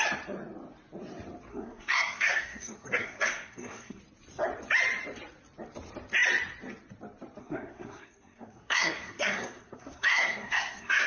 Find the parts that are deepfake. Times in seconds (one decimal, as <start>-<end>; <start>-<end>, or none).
1.5-4.0; 7.4-11.1

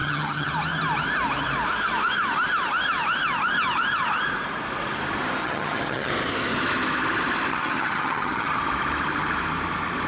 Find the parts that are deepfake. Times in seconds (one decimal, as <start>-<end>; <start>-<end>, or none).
0.0-0.5; 5.4-6.1; 7.5-8.6

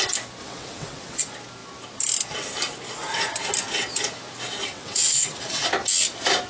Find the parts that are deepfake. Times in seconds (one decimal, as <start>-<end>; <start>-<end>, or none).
0.4-1.2; 4.7-5.6

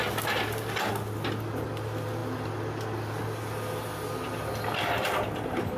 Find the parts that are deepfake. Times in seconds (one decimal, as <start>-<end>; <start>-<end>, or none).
none

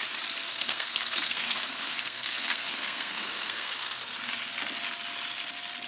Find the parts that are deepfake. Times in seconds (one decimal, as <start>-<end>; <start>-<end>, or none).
0.5-4.0